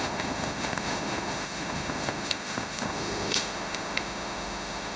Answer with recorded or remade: remade